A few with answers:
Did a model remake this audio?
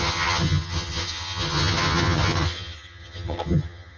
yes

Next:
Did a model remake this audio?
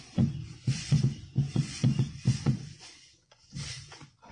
yes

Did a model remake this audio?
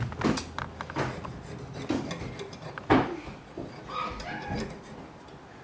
no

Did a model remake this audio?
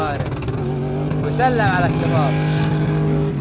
no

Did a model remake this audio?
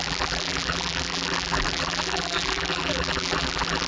yes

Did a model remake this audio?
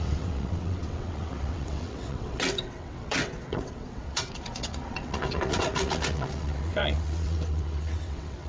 yes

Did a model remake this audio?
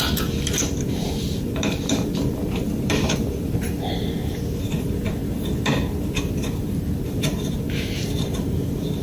yes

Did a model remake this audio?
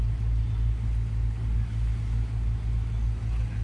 no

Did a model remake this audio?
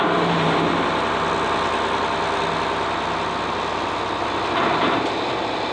no